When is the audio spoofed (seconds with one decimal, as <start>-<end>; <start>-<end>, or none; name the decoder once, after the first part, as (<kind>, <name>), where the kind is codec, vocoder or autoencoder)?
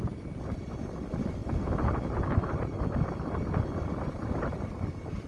none